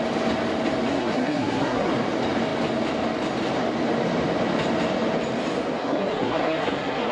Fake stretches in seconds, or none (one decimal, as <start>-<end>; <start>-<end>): 0.9-1.9; 5.8-7.1